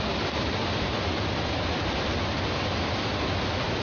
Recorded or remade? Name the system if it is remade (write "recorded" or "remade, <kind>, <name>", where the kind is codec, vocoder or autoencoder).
recorded